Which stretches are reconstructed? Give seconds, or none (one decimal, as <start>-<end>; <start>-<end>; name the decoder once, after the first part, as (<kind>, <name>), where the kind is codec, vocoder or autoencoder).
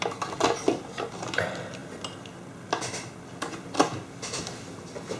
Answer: none